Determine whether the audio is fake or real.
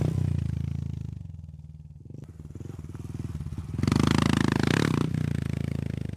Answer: real